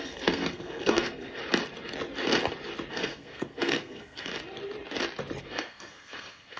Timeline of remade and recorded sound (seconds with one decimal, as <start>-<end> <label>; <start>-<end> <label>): 0.0-1.4 remade; 1.4-2.9 recorded; 2.9-4.3 remade; 4.3-5.4 recorded; 5.4-6.6 remade